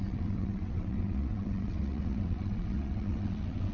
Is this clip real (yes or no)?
no